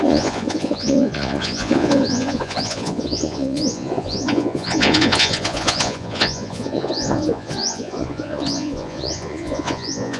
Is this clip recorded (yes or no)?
no